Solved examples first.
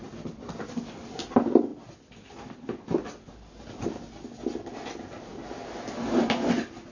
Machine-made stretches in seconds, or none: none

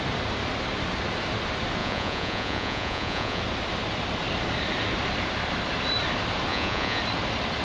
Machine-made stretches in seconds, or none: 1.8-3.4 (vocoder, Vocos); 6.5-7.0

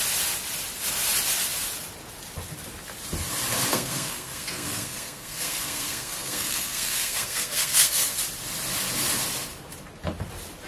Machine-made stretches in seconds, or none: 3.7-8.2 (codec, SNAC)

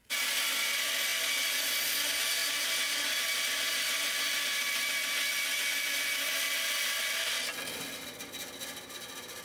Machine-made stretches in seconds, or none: none

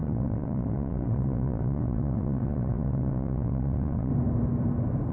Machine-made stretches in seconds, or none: 0.0-4.1 (vocoder, WaveNeXt)